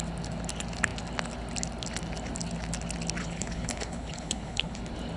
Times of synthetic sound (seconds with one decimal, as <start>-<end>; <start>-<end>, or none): 3.2-4.8